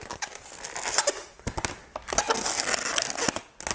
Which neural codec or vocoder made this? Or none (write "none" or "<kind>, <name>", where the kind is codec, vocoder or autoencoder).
none